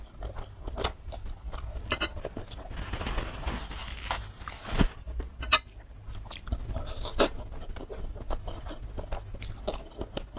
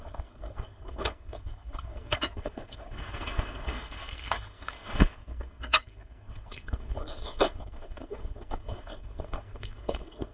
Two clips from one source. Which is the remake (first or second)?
second